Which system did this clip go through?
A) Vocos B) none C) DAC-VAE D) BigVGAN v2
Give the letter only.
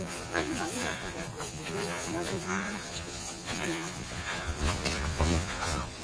A